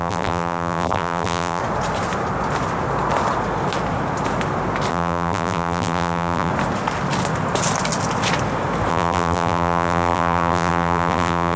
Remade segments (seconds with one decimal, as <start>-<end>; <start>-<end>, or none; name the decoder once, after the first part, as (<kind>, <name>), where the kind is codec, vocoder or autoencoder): 0.0-1.6 (vocoder, BigVGAN v2); 4.9-6.5; 8.9-11.6